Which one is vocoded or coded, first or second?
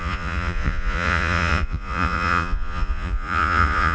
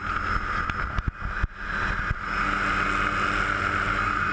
first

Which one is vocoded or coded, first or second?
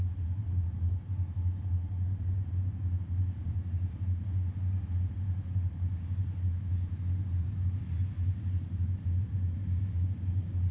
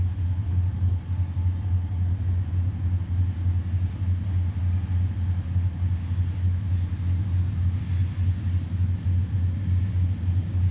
first